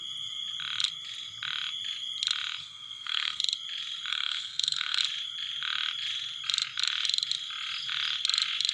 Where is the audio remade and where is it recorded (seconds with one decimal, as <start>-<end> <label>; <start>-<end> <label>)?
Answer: 0.0-2.6 recorded; 2.6-3.4 remade; 3.4-4.1 recorded; 4.1-5.0 remade; 5.0-8.7 recorded

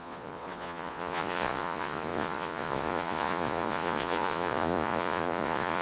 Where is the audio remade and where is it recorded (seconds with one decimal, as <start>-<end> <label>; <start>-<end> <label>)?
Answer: 0.0-5.8 remade

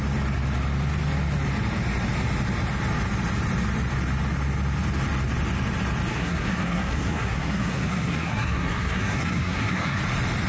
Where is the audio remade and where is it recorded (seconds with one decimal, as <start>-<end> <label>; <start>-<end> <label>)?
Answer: 0.0-6.1 recorded; 6.1-10.0 remade; 10.0-10.5 recorded

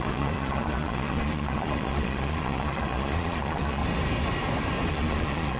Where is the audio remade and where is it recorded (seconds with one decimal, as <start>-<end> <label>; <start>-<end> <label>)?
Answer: 0.0-3.8 remade; 3.8-4.9 recorded; 4.9-5.6 remade

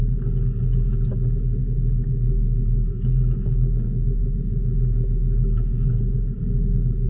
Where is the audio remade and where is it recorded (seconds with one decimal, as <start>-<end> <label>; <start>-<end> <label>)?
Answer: 0.0-1.6 recorded; 1.6-5.9 remade; 5.9-7.1 recorded

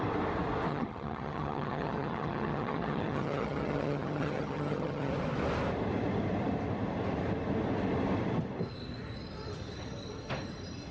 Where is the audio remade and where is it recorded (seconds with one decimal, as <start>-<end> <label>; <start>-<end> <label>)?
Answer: 0.0-0.7 recorded; 0.7-5.1 remade; 5.1-10.9 recorded

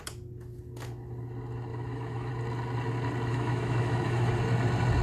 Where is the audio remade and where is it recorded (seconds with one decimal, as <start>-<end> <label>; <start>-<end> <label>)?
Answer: 0.0-1.7 recorded; 1.7-2.3 remade; 2.3-3.3 recorded; 3.3-4.3 remade; 4.3-5.0 recorded